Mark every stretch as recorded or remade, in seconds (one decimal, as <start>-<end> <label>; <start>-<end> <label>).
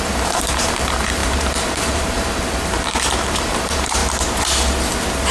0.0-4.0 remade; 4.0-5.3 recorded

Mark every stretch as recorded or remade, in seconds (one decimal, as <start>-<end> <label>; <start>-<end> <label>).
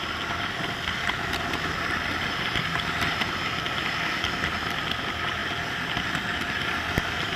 0.0-7.4 recorded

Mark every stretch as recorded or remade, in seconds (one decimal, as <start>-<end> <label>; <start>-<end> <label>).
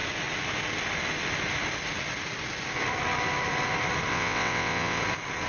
0.0-4.1 recorded; 4.1-5.0 remade; 5.0-5.5 recorded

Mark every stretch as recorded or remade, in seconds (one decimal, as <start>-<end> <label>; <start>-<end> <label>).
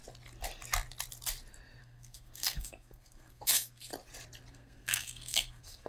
0.0-1.8 recorded; 1.8-3.9 remade; 3.9-4.5 recorded; 4.5-5.9 remade